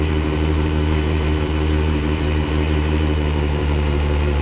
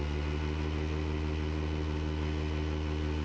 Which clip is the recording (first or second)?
second